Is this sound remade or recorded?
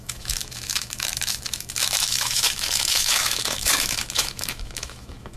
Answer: remade